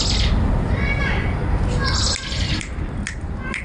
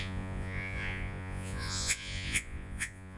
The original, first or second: first